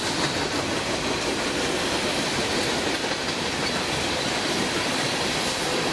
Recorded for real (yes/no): no